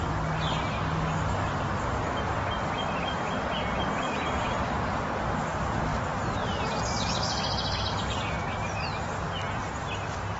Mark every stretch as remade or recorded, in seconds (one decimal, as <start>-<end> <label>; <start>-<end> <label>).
0.0-10.4 recorded